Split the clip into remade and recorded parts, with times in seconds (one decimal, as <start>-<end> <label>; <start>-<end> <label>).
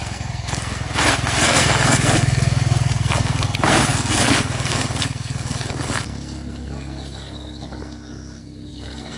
0.0-9.2 remade